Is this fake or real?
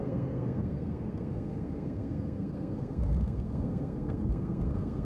fake